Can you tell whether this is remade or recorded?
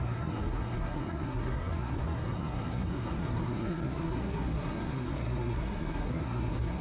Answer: remade